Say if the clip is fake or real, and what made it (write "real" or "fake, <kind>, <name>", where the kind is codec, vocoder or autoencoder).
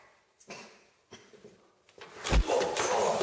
real